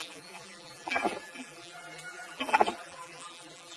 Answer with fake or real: fake